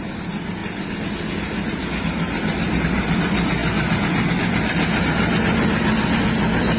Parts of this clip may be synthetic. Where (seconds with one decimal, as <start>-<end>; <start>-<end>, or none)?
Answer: none

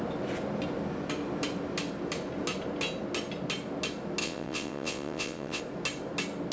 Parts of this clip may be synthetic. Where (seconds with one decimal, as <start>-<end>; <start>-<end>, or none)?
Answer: 4.2-5.6